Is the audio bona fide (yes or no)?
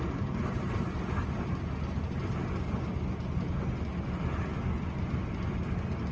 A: yes